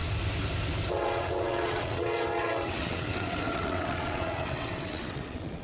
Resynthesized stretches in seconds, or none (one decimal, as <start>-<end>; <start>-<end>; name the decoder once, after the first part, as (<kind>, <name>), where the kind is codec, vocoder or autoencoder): 0.9-5.6 (vocoder, WaveNeXt)